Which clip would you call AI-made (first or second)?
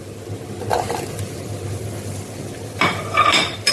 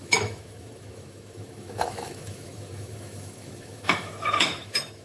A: second